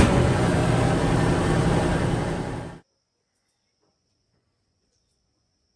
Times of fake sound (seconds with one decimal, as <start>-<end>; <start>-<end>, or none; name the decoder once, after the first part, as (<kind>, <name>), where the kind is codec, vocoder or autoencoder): 0.0-0.6 (vocoder, Vocos); 3.0-5.8